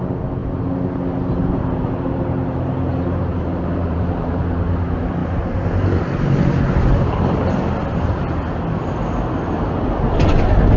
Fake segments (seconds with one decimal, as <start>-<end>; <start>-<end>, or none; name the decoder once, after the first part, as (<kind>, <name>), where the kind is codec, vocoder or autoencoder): 1.4-4.3 (vocoder, BigVGAN v2)